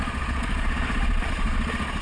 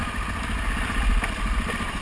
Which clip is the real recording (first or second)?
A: second